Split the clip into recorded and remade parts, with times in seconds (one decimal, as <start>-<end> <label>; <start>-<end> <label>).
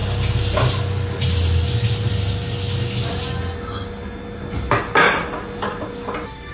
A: 0.0-6.5 recorded